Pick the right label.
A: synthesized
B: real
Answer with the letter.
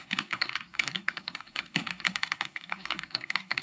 A